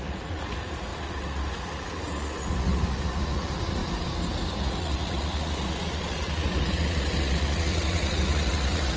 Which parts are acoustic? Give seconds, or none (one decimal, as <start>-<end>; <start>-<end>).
3.8-4.5